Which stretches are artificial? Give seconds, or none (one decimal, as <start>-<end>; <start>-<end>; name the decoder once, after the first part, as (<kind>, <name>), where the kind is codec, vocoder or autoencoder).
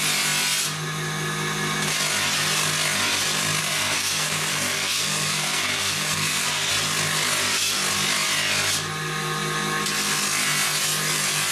3.6-6.7 (codec, SNAC)